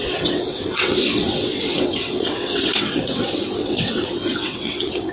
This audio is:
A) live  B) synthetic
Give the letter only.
B